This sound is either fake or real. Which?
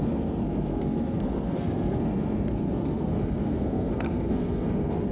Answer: fake